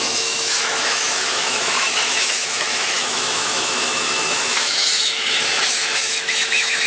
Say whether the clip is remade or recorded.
remade